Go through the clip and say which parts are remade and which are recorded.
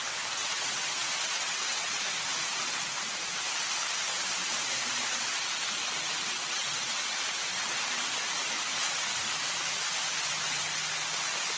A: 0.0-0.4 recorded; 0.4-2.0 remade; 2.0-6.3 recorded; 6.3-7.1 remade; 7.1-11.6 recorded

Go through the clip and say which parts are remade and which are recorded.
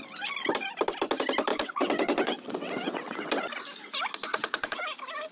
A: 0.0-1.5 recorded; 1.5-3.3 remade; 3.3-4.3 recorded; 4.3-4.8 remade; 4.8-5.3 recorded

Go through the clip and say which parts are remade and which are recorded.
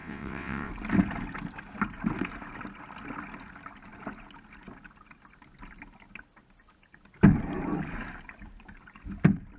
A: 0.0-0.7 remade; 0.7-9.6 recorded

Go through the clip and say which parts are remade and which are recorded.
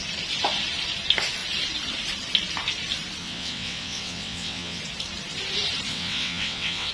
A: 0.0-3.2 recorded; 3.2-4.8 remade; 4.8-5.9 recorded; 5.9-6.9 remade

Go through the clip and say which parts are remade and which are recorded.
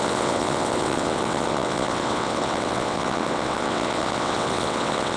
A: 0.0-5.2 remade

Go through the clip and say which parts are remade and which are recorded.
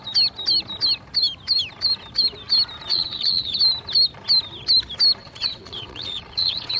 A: 0.0-2.9 recorded; 2.9-3.6 remade; 3.6-5.2 recorded; 5.2-6.8 remade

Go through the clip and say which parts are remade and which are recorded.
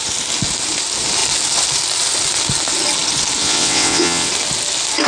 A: 0.0-3.4 recorded; 3.4-4.3 remade; 4.3-5.1 recorded